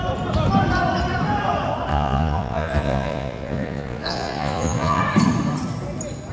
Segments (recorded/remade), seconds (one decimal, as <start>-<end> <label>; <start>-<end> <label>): 0.0-1.9 recorded; 1.9-5.0 remade; 5.0-6.3 recorded